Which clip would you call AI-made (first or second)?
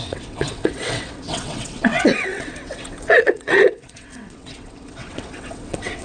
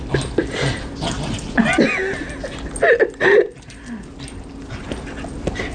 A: first